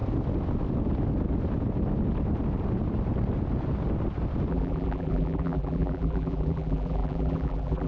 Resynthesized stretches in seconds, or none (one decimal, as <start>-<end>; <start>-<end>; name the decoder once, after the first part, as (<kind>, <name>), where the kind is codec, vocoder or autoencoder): 4.5-7.9 (vocoder, BigVGAN v2)